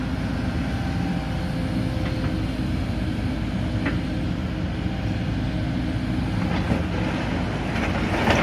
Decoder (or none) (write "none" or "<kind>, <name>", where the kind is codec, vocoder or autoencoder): none